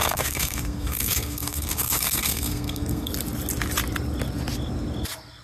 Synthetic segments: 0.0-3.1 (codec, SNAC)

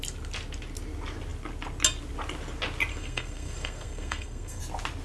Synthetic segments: 2.9-4.6 (codec, SNAC)

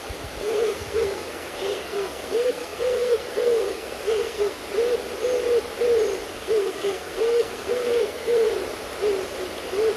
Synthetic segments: 0.0-4.6 (codec, SNAC); 6.3-8.5

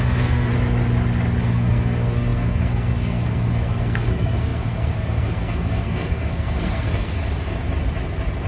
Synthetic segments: 0.0-0.5 (codec, SNAC); 1.4-7.2

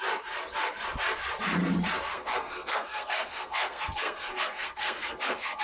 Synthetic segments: 2.1-5.6 (codec, SNAC)

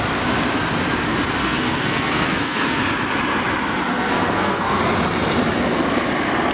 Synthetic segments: 1.4-2.8 (codec, SNAC); 3.9-4.8

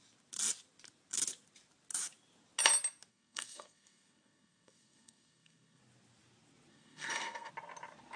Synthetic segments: 3.1-5.8 (codec, SNAC); 6.7-7.5

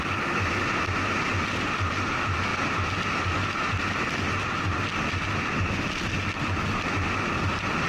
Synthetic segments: none